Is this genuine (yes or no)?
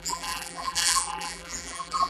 no